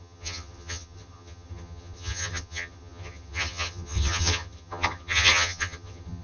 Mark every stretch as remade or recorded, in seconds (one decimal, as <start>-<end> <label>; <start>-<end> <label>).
0.0-6.2 remade